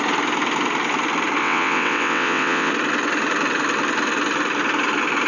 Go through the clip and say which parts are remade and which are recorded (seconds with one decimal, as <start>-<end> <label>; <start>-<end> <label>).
0.0-1.4 recorded; 1.4-2.7 remade; 2.7-5.3 recorded